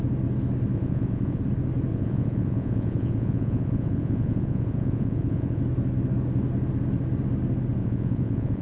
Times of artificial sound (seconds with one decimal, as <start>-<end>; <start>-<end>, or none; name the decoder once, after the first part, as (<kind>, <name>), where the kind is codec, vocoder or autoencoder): 0.7-1.4 (vocoder, Vocos); 1.9-5.6; 7.8-8.6